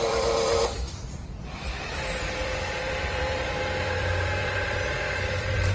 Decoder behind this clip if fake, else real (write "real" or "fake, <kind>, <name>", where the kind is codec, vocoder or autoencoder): fake, vocoder, BigVGAN v2